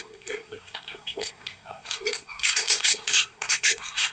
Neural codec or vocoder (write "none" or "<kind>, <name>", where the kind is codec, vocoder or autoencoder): codec, SNAC